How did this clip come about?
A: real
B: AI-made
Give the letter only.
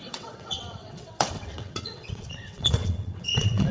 B